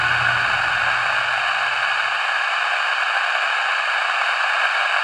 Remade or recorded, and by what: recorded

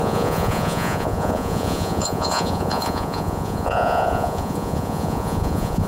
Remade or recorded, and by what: remade, vocoder, Vocos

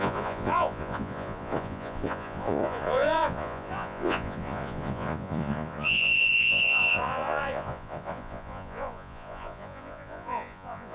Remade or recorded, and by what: remade, vocoder, Vocos